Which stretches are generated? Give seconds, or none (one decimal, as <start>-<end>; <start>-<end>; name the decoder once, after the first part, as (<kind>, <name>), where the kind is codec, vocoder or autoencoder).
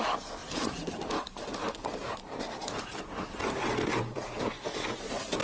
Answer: 3.9-4.4 (vocoder, BigVGAN v2)